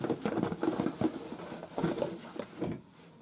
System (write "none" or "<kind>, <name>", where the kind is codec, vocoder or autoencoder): none